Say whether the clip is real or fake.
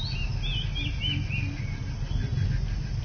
real